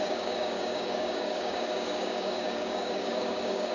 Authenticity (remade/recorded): remade